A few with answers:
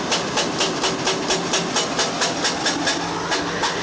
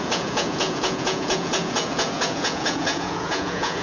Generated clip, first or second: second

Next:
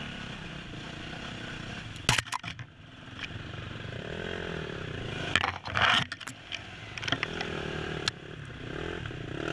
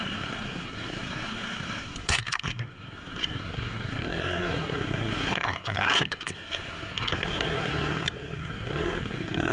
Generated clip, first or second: second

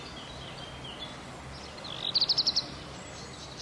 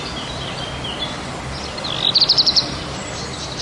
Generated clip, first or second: second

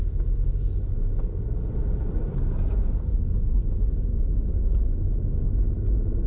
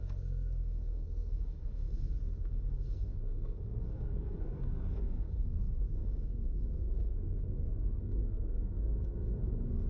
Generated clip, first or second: second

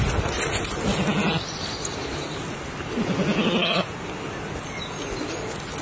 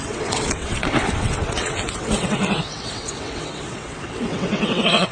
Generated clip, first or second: second